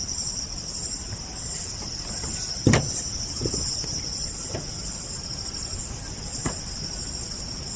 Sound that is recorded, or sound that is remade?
recorded